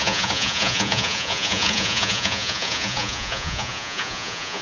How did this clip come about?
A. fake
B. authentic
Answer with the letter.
A